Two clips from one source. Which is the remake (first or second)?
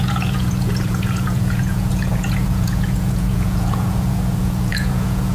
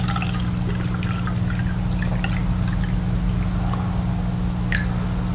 first